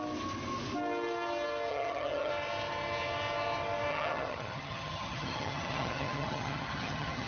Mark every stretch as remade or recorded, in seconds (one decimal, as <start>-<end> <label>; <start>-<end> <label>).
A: 0.0-1.7 recorded; 1.7-2.3 remade; 2.3-3.9 recorded; 3.9-7.3 remade